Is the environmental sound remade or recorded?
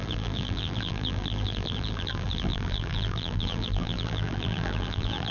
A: remade